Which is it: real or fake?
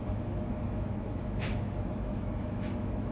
fake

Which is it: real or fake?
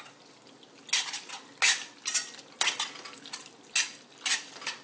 real